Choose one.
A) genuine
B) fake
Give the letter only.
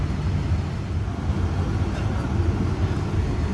A